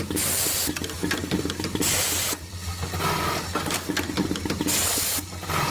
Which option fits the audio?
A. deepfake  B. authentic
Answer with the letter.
A